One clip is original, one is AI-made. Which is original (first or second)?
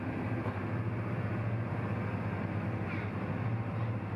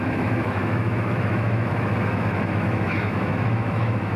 first